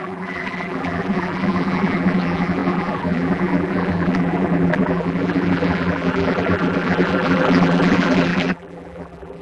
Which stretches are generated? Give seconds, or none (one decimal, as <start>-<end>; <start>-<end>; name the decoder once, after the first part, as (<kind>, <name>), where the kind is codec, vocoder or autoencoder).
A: 0.0-9.4 (vocoder, BigVGAN v2)